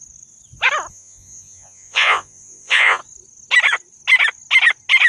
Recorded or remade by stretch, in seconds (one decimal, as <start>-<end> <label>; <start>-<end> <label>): 0.0-0.9 recorded; 0.9-3.0 remade; 3.0-5.1 recorded